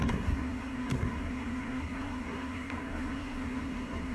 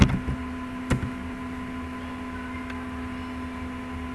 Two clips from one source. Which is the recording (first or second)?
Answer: second